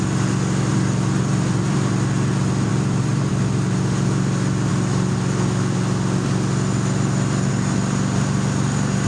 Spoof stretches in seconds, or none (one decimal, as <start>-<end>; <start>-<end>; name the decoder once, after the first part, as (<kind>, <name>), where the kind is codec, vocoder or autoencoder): 0.7-1.9 (vocoder, BigVGAN v2); 2.7-3.3